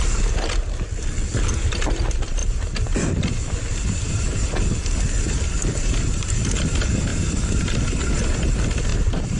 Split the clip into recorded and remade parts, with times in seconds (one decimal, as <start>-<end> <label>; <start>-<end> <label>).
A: 0.0-2.4 recorded; 2.4-6.6 remade; 6.6-7.1 recorded; 7.1-7.8 remade; 7.8-8.9 recorded; 8.9-9.4 remade